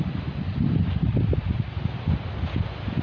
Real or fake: real